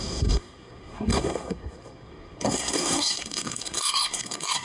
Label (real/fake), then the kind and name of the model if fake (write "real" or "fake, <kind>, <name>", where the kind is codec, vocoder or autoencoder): fake, codec, SNAC